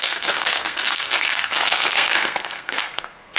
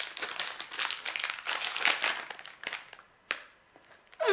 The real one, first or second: second